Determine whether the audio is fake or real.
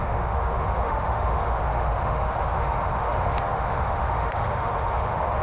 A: fake